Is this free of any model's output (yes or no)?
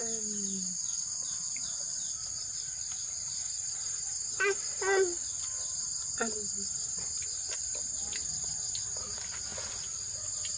yes